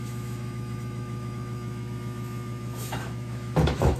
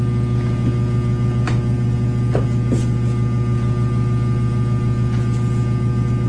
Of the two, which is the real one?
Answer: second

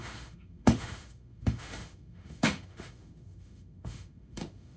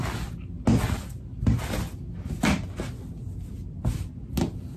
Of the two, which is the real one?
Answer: second